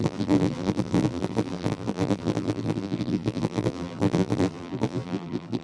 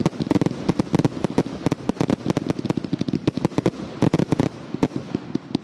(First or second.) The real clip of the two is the second